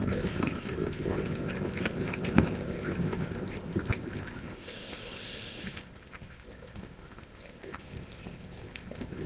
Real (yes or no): no